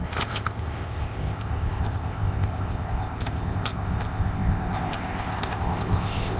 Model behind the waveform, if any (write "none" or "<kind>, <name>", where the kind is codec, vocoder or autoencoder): codec, ZipCodec